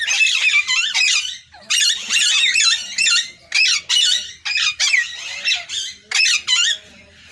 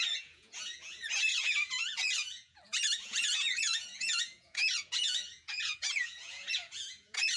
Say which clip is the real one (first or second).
first